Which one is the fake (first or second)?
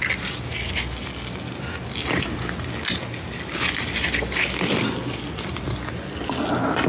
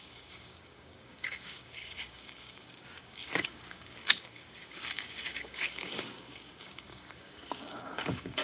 second